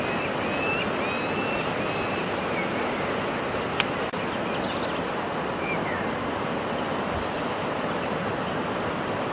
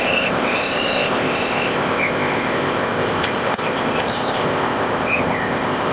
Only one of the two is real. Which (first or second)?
first